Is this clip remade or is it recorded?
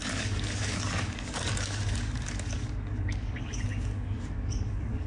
remade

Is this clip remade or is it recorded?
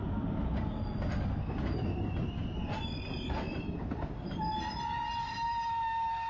recorded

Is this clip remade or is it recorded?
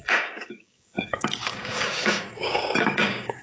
remade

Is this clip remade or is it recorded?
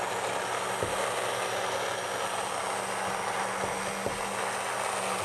recorded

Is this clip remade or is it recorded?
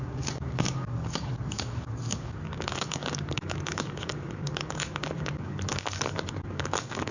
remade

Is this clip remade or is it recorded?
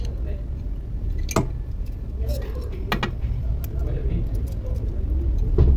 recorded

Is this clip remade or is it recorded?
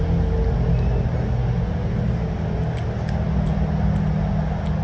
recorded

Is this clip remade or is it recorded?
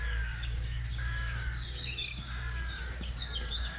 remade